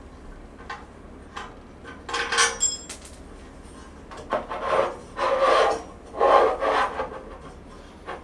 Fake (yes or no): no